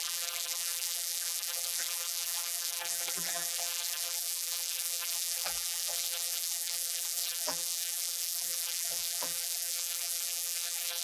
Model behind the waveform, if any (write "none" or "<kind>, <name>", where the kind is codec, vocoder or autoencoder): vocoder, BigVGAN v2